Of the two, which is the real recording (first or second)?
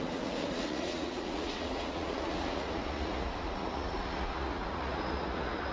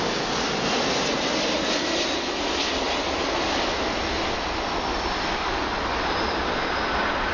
second